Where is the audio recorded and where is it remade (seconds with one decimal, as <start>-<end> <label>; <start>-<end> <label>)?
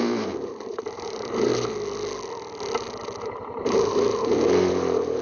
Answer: 0.0-1.5 remade; 1.5-3.2 recorded; 3.2-5.2 remade